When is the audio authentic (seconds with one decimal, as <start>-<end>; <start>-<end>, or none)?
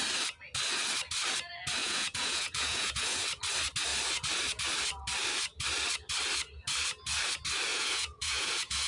0.0-1.8; 3.2-7.7